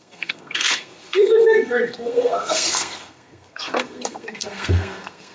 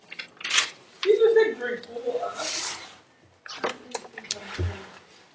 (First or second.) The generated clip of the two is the first